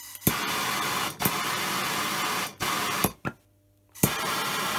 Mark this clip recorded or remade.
recorded